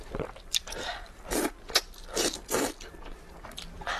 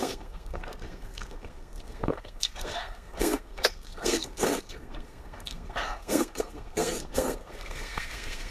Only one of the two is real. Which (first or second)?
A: first